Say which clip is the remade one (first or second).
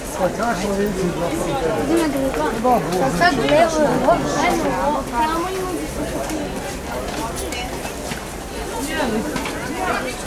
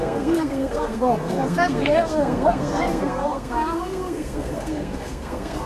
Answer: second